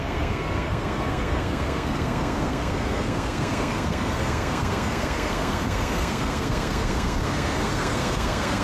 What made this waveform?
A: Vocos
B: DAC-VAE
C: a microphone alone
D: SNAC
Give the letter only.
D